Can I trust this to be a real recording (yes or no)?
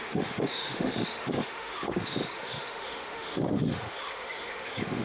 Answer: no